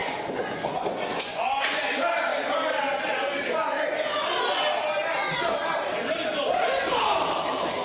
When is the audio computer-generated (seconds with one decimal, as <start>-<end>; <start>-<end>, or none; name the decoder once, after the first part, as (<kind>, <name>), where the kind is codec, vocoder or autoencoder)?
0.0-1.8 (vocoder, Vocos)